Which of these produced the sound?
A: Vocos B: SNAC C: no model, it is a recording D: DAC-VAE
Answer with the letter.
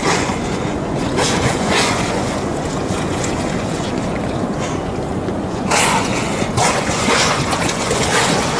A